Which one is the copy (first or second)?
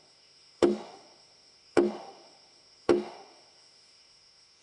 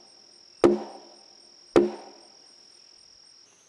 first